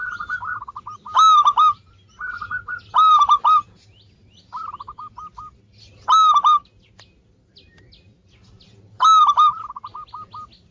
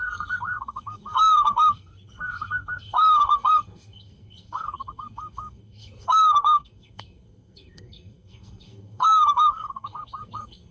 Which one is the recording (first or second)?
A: first